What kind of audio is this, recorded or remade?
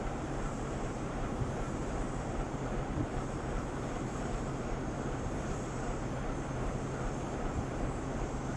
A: remade